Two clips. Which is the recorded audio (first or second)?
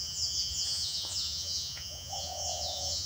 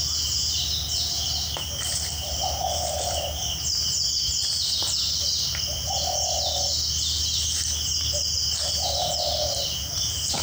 second